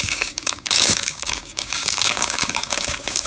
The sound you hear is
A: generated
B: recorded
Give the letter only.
A